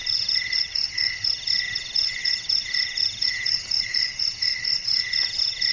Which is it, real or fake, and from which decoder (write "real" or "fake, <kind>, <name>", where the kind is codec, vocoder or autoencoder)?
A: real